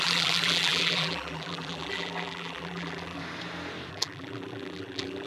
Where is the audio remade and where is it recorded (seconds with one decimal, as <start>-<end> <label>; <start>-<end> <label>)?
0.0-3.2 remade; 3.2-3.9 recorded; 3.9-5.3 remade